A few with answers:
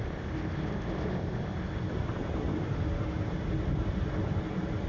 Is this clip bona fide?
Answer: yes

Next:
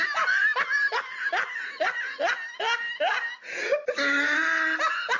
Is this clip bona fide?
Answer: yes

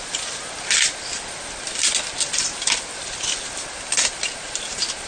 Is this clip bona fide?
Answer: yes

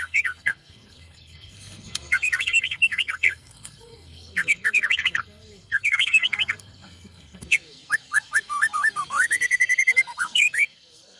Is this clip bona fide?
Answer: no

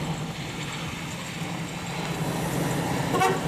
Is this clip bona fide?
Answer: yes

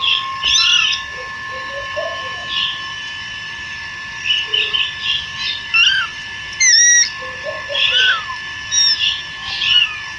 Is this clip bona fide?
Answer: yes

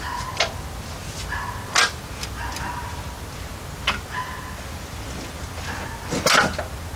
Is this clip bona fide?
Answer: yes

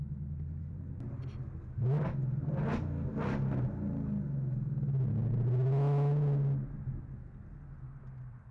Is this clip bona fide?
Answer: yes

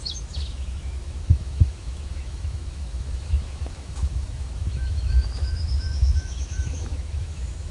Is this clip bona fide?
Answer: no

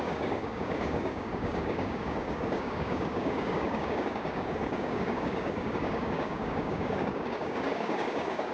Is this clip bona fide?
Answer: no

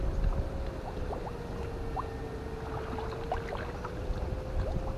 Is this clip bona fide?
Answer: yes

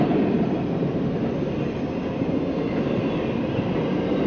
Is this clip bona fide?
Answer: yes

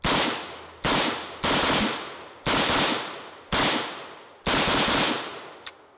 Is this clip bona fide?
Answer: yes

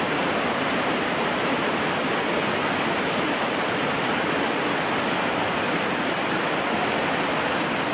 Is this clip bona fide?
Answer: yes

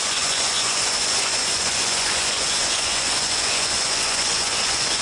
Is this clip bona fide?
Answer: no